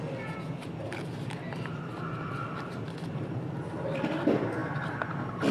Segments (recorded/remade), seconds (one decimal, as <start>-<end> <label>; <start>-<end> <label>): 0.0-5.5 recorded